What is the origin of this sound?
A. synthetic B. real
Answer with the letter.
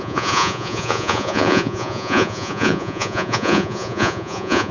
A